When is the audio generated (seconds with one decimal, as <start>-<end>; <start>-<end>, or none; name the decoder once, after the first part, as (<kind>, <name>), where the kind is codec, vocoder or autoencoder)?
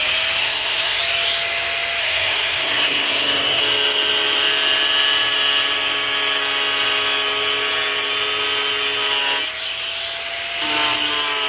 0.4-1.0 (codec, SNAC); 2.0-3.6